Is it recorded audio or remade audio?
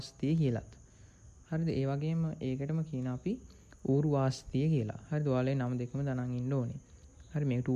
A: recorded